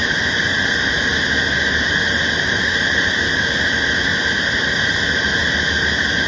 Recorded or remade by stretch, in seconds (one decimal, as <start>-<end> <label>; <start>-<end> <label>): 0.0-6.3 recorded